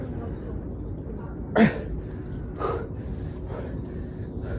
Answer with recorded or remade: recorded